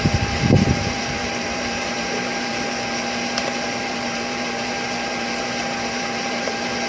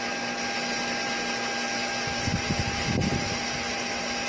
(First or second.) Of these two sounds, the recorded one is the second